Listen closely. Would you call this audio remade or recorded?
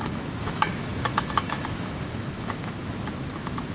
remade